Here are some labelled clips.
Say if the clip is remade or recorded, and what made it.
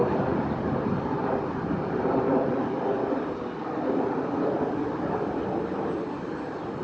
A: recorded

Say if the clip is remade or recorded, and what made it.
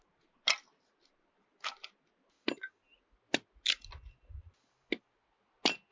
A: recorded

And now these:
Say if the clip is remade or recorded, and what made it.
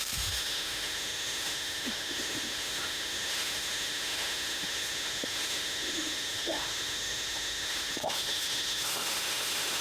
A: remade, autoencoder, DAC-VAE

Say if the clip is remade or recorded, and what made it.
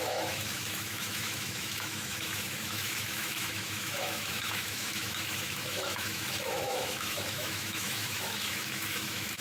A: remade, autoencoder, DAC-VAE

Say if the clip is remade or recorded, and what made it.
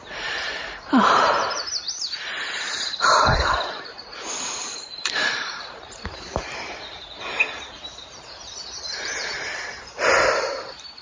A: remade, vocoder, BigVGAN v2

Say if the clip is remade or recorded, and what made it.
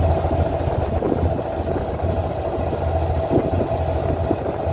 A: recorded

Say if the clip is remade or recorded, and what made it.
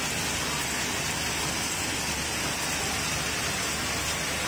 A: recorded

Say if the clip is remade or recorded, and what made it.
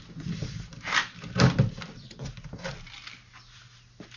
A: recorded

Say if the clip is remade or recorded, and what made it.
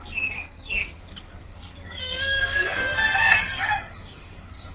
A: remade, codec, SNAC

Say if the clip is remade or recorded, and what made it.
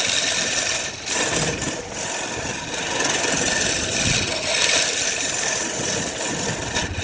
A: recorded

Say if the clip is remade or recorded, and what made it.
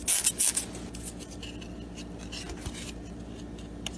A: recorded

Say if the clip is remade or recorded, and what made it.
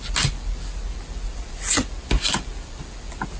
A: recorded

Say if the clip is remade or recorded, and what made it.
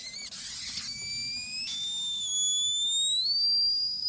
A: recorded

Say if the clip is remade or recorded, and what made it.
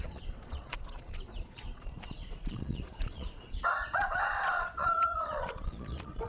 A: remade, vocoder, Vocos